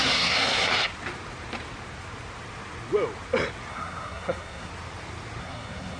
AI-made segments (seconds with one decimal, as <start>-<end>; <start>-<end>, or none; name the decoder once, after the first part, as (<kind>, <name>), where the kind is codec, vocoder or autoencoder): 0.0-0.7 (codec, SNAC); 3.7-4.7; 5.4-6.0